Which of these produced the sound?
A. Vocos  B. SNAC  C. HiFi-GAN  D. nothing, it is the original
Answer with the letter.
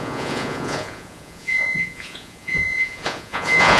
A